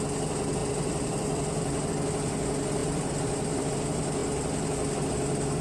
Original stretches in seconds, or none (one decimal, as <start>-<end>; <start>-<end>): 0.0-0.6; 1.9-2.8; 3.7-5.6